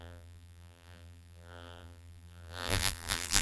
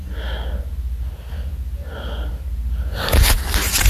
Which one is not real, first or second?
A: first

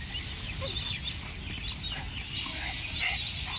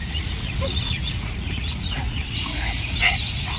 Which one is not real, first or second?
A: second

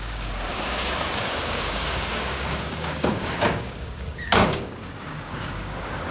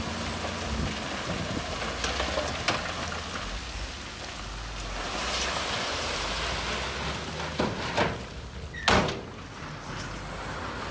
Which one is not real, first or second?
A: first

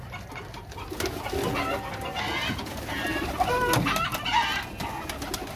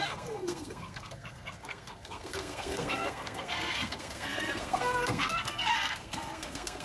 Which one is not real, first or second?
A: second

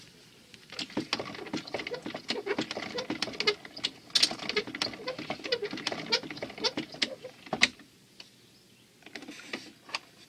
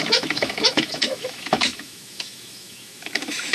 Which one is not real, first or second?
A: second